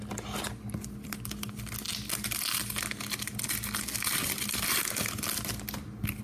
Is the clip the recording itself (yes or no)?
yes